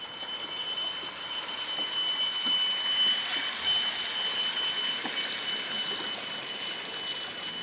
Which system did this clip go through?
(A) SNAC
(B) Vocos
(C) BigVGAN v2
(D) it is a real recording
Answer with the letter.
D